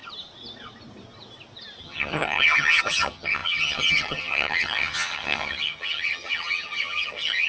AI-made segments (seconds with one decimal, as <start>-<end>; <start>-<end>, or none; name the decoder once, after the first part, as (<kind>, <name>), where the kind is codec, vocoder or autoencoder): 1.8-7.5 (vocoder, HiFi-GAN)